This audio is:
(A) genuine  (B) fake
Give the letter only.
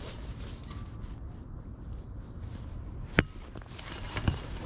A